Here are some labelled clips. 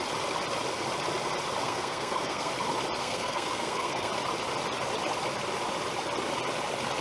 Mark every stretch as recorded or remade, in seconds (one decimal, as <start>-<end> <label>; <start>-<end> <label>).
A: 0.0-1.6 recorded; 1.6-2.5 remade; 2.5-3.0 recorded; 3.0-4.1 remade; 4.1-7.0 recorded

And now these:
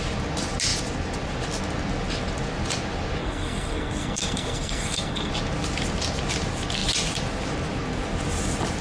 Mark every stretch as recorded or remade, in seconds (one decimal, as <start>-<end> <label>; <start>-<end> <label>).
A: 0.0-3.2 recorded; 3.2-5.3 remade; 5.3-8.8 recorded

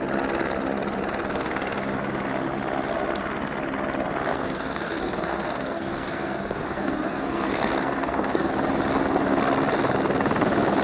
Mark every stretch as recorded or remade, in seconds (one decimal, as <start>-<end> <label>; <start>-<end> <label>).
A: 0.0-4.3 recorded; 4.3-8.5 remade; 8.5-10.8 recorded

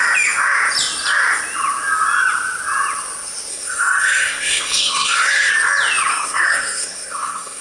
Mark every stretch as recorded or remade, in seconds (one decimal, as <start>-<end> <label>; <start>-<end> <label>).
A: 0.0-3.5 recorded; 3.5-5.5 remade; 5.5-6.1 recorded; 6.1-7.6 remade